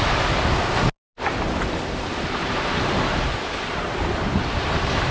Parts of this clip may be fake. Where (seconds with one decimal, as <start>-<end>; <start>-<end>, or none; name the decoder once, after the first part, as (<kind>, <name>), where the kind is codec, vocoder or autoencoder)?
2.4-5.1 (vocoder, BigVGAN v2)